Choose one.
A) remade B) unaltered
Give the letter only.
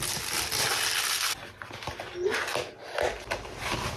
B